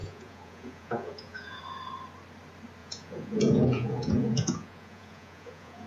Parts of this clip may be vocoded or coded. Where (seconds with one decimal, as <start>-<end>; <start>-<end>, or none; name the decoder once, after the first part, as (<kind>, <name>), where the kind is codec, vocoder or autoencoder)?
0.0-1.6 (vocoder, Vocos); 2.8-5.9